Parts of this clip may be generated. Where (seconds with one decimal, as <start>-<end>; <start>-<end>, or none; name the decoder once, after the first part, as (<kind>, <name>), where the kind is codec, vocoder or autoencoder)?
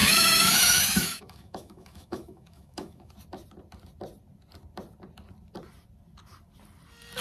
0.0-3.1 (autoencoder, DAC-VAE)